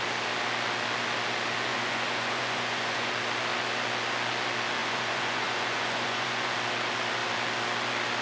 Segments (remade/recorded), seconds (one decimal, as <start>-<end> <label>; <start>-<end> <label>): 0.0-1.7 recorded; 1.7-3.1 remade; 3.1-4.8 recorded; 4.8-6.5 remade; 6.5-8.2 recorded